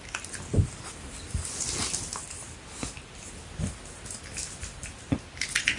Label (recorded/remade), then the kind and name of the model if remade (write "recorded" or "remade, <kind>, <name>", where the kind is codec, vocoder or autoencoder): recorded